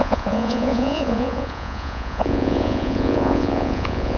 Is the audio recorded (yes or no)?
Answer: no